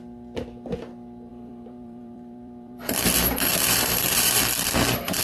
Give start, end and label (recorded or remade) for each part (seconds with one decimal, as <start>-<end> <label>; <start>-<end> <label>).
0.0-1.3 recorded; 1.3-4.4 remade; 4.4-5.2 recorded

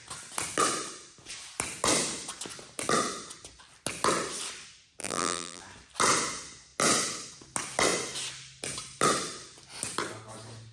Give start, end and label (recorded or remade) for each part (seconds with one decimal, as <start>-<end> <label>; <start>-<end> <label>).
0.0-5.0 recorded; 5.0-5.6 remade; 5.6-10.7 recorded

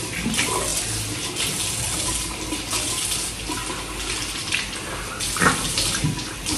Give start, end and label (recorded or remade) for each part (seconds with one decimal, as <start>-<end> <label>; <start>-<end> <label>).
0.0-6.6 recorded

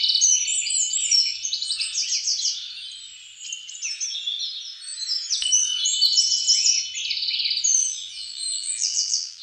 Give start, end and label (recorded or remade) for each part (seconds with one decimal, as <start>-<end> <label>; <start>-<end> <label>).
0.0-7.8 recorded; 7.8-9.4 remade

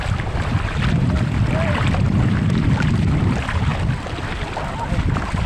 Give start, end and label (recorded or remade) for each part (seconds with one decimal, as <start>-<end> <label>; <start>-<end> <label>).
0.0-3.7 remade; 3.7-5.0 recorded; 5.0-5.5 remade